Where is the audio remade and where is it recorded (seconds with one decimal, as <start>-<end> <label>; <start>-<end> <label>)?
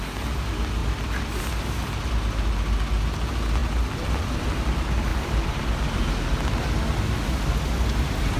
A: 0.0-3.6 recorded; 3.6-4.4 remade; 4.4-5.1 recorded; 5.1-5.6 remade; 5.6-8.4 recorded